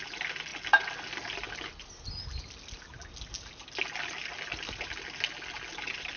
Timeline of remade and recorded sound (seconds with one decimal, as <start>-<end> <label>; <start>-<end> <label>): 0.0-6.2 recorded